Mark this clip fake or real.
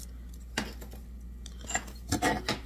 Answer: real